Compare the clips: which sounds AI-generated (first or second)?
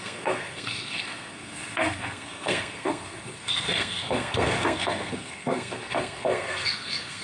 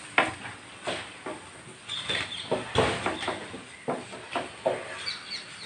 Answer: first